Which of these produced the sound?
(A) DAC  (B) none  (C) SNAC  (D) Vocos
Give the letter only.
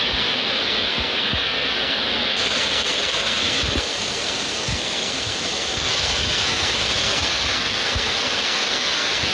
C